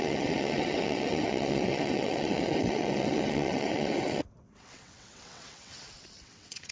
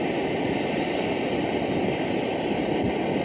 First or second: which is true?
second